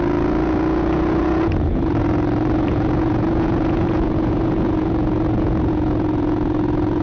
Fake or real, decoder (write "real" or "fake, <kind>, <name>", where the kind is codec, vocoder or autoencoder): fake, vocoder, Vocos